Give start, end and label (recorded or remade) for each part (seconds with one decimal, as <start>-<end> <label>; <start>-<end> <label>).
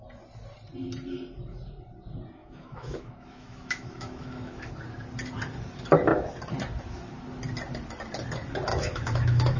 0.0-2.4 recorded; 2.4-4.7 remade; 4.7-8.7 recorded; 8.7-9.6 remade